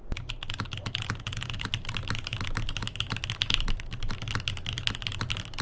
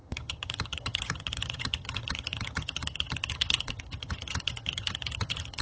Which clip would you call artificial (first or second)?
second